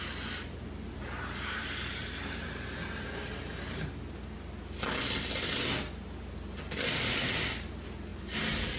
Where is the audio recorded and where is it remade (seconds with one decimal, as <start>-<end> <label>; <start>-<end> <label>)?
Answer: 0.0-8.8 recorded